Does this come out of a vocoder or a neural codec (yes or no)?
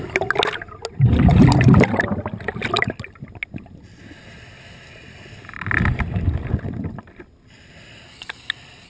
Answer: no